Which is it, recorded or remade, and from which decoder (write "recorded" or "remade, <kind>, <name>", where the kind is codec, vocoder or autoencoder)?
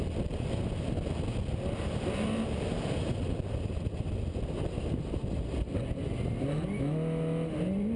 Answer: recorded